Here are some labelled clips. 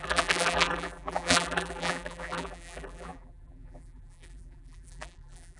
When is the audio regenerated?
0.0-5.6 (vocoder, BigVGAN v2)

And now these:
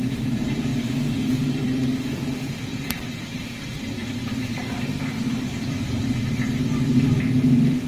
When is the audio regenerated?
0.0-0.7 (vocoder, BigVGAN v2); 1.3-7.9